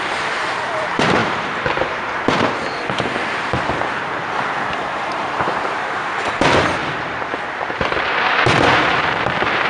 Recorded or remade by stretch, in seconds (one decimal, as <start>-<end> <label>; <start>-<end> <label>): 0.0-6.8 remade; 6.8-7.5 recorded; 7.5-9.7 remade